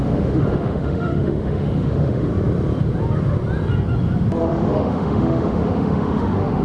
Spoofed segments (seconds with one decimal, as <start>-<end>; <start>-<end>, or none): 0.0-2.3; 4.4-6.6